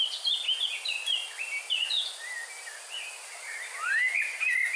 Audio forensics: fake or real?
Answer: real